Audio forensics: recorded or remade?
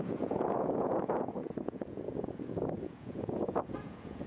remade